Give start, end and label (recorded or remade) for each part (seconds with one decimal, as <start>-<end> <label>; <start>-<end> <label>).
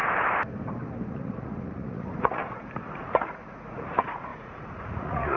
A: 0.0-1.1 recorded; 1.1-2.4 remade; 2.4-2.9 recorded; 2.9-5.4 remade